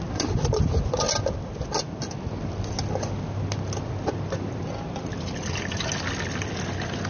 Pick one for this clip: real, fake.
real